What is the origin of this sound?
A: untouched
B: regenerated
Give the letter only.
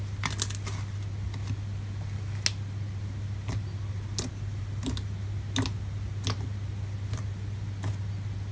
A